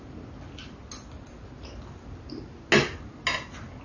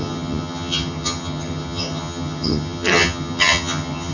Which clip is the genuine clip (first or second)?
first